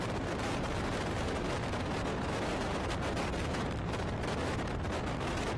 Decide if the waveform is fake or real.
fake